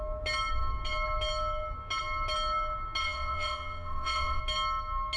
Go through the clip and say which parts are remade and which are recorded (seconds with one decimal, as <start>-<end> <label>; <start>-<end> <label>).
0.0-3.0 recorded; 3.0-4.4 remade; 4.4-5.2 recorded